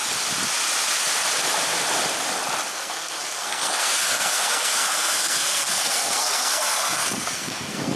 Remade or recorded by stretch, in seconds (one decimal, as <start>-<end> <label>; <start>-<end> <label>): 0.0-2.7 recorded; 2.7-8.0 remade

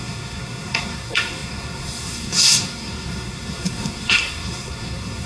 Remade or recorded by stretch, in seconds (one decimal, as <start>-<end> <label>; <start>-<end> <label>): 0.0-5.3 remade

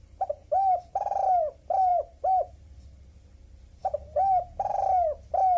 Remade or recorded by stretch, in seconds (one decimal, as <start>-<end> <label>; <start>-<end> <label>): 0.0-5.6 recorded

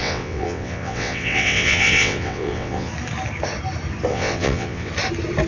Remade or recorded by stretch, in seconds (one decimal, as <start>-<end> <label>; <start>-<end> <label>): 0.0-2.9 remade; 2.9-4.1 recorded; 4.1-4.9 remade; 4.9-5.5 recorded

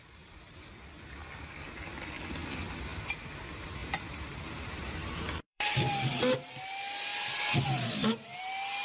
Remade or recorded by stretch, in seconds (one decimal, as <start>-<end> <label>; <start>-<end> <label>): 0.0-3.8 recorded; 3.8-5.7 remade; 5.7-8.8 recorded

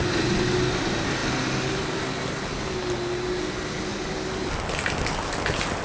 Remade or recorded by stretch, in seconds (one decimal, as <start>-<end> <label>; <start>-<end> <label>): 0.0-5.8 recorded

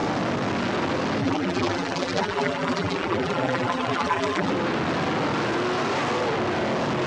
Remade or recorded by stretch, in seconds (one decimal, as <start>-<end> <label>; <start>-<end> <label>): 0.0-1.2 recorded; 1.2-4.5 remade; 4.5-7.1 recorded